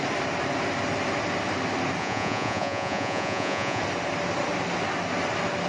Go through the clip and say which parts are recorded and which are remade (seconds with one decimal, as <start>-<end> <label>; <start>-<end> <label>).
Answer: 0.0-2.0 recorded; 2.0-3.8 remade; 3.8-5.7 recorded